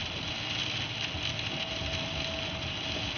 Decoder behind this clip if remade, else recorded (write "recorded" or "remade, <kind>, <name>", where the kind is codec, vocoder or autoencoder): recorded